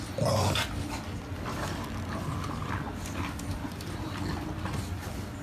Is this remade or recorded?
recorded